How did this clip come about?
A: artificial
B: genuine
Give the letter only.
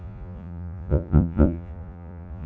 A